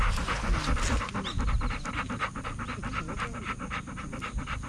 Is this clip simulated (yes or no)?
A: no